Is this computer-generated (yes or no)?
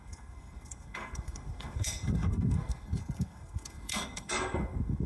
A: yes